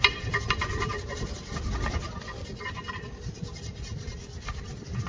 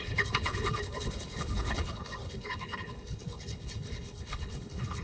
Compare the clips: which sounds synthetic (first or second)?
second